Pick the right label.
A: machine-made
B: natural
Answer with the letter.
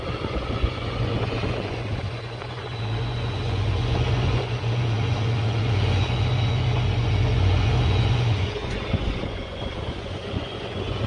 A